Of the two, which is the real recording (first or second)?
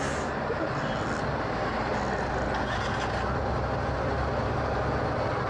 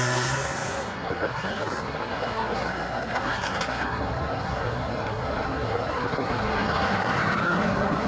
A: first